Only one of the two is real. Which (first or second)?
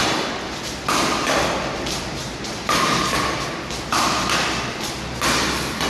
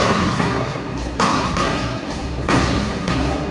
first